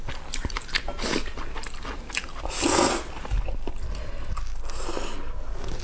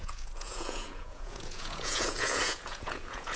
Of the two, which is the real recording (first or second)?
first